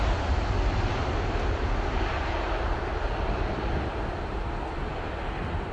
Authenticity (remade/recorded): recorded